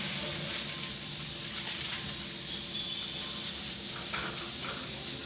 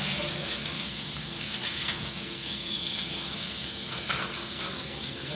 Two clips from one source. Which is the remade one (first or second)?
second